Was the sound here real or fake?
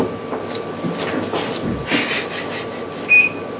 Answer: real